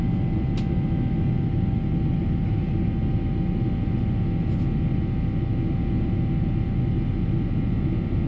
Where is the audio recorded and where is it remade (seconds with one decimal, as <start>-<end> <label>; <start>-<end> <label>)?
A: 0.0-8.3 recorded